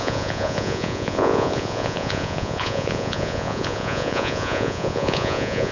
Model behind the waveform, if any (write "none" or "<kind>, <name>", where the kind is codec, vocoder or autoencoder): vocoder, Vocos